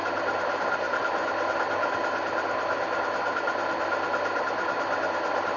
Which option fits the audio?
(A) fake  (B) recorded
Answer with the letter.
B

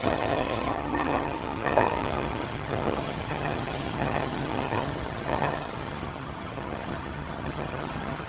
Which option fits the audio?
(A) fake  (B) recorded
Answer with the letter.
A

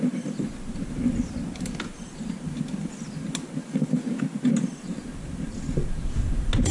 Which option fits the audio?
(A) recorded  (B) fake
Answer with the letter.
A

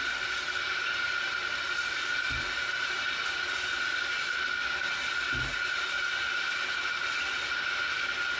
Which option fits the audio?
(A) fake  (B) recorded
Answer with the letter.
B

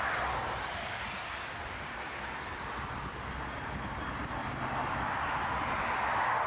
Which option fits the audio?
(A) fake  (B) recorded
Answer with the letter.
B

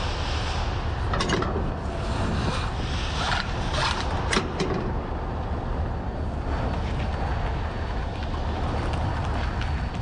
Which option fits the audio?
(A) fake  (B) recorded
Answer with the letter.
B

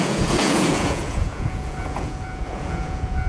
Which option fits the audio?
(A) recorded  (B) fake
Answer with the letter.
B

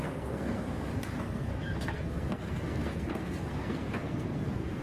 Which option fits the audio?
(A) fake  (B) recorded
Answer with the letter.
A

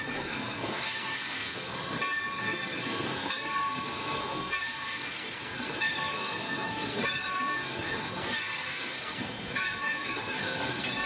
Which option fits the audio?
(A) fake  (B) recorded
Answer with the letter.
A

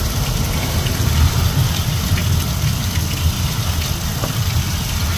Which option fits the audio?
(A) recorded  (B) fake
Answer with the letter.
A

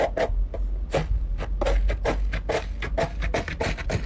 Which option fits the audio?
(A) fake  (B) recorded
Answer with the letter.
B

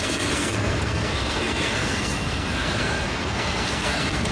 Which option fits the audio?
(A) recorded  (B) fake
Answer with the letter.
B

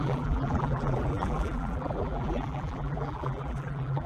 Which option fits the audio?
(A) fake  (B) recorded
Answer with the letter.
A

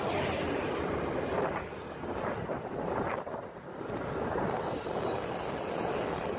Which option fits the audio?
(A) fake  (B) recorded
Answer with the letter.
B